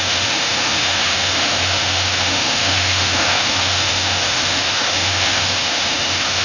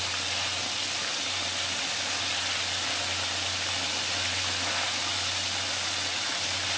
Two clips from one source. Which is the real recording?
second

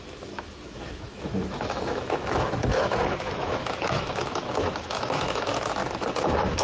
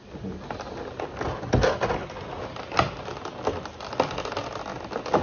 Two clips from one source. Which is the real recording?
second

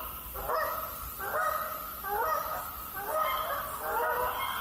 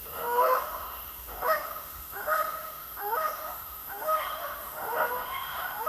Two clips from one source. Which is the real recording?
first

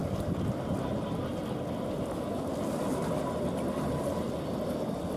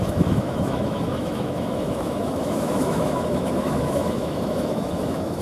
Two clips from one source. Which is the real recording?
first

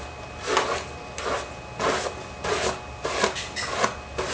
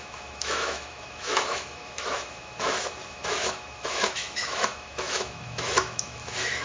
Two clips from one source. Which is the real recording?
first